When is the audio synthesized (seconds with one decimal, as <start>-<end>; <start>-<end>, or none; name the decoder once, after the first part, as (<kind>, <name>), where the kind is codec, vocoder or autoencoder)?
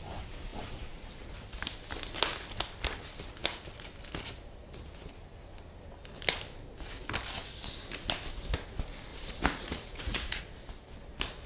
0.5-1.3 (vocoder, Vocos); 9.1-10.4